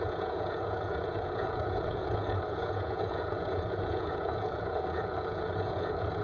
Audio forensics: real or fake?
fake